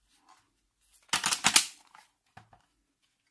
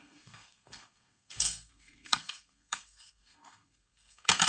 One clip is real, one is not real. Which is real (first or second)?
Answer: first